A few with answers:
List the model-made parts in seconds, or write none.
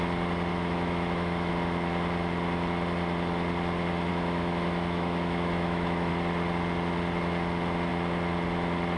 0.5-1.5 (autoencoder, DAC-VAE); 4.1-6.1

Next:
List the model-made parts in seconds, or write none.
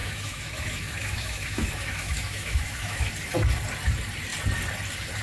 0.0-3.1 (autoencoder, DAC-VAE)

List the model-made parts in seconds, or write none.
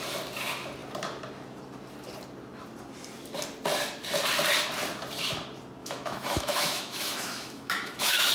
5.8-8.3 (autoencoder, DAC-VAE)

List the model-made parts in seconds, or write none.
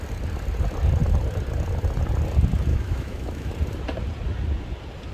2.7-3.5 (autoencoder, DAC-VAE)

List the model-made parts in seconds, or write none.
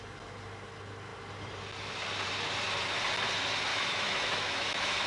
3.7-5.1 (autoencoder, DAC-VAE)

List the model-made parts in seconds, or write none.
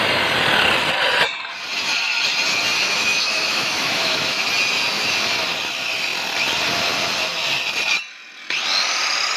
2.8-4.5 (autoencoder, DAC-VAE)